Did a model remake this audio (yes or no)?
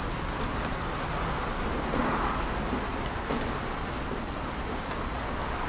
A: no